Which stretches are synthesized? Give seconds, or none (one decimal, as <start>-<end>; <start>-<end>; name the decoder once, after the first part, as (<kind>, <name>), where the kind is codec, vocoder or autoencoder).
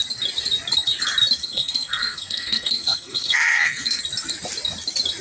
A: 1.4-4.0 (codec, SNAC)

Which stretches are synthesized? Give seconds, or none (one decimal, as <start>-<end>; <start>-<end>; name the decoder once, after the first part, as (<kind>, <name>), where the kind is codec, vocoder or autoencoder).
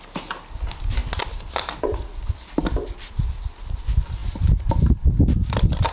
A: none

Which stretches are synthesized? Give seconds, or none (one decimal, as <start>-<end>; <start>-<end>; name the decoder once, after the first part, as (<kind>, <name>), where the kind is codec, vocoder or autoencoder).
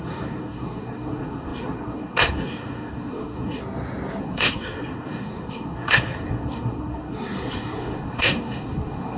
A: 0.0-3.6 (codec, SNAC); 4.2-9.2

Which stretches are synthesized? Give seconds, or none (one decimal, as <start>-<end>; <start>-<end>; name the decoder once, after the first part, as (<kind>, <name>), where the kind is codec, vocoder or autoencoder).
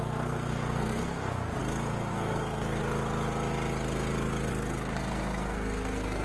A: 0.0-1.6 (codec, SNAC); 2.1-2.8; 4.5-6.2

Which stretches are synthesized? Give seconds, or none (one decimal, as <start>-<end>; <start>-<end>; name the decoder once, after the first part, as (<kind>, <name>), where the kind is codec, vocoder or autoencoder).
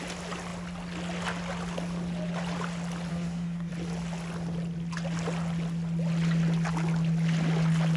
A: 3.1-3.7 (codec, SNAC)